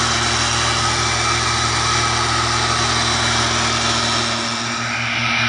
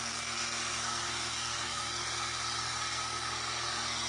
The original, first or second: first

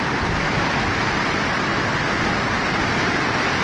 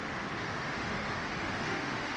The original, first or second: first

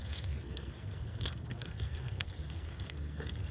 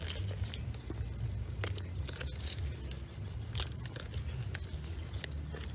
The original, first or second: second